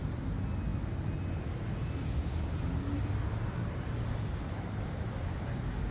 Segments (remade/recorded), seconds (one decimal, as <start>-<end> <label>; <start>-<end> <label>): 0.0-5.9 recorded